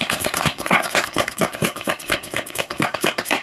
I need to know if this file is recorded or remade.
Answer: remade